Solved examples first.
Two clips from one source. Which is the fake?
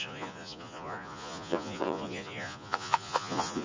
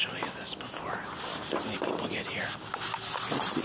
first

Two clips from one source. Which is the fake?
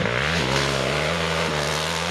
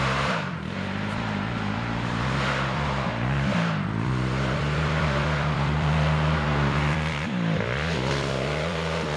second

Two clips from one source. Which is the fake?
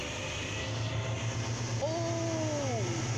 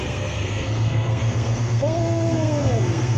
second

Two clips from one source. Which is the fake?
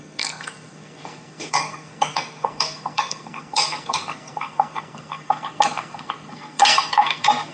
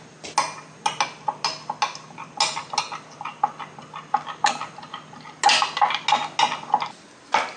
first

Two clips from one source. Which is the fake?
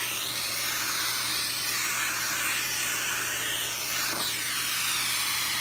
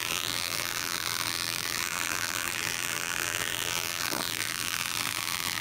second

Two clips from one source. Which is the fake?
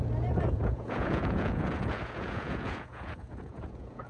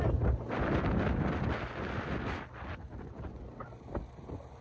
first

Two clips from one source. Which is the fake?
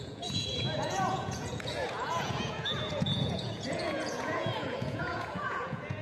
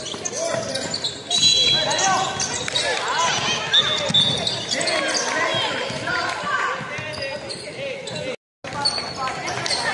first